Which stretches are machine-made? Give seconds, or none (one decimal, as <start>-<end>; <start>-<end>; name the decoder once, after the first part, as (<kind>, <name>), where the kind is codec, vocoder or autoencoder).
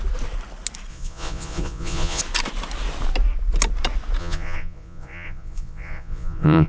0.9-2.2 (vocoder, Vocos); 4.2-6.7